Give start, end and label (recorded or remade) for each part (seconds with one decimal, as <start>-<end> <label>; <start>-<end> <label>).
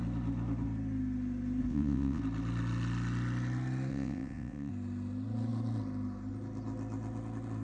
0.0-1.7 recorded; 1.7-2.2 remade; 2.2-3.9 recorded; 3.9-4.7 remade; 4.7-7.6 recorded